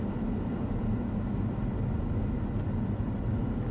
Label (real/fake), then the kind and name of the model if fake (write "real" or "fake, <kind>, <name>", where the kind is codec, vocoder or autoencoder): real